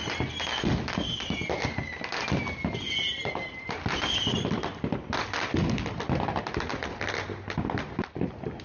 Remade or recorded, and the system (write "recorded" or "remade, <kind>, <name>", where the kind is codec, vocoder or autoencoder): recorded